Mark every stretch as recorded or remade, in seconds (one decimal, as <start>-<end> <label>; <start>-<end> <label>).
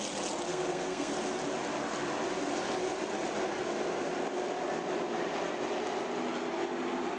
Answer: 0.0-0.5 recorded; 0.5-1.1 remade; 1.1-7.2 recorded